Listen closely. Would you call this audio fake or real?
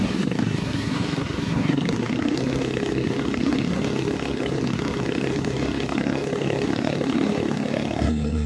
fake